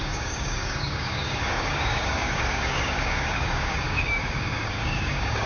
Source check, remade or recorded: remade